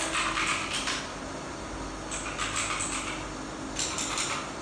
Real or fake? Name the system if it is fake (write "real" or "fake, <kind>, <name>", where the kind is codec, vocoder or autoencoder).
real